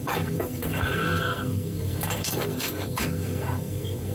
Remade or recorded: remade